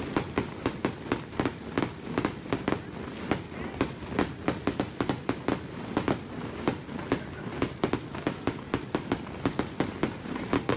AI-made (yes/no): no